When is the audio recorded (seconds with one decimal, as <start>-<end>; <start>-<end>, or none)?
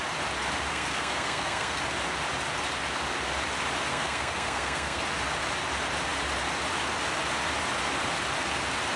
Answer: 0.0-0.7; 1.8-3.9; 5.0-9.0